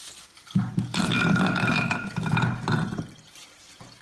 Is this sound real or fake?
real